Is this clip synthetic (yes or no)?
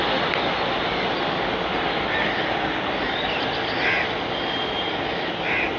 no